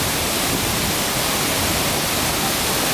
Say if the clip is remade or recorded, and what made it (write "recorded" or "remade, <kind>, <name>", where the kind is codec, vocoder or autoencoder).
recorded